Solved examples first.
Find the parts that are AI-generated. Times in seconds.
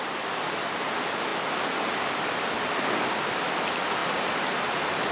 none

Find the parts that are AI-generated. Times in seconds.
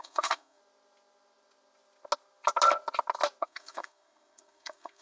0.0-0.6; 3.4-5.0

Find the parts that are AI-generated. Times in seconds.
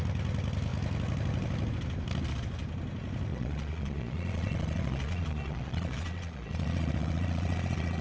3.3-8.0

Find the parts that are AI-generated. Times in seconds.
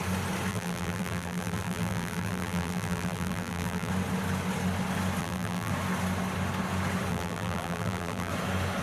0.5-3.9; 5.2-5.7; 7.1-8.3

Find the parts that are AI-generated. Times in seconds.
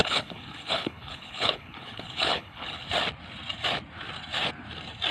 0.0-2.9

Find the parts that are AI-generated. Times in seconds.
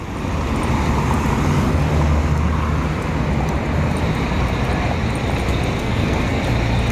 5.8-6.4